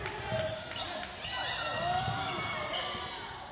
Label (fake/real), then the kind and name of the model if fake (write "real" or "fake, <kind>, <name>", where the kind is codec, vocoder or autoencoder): real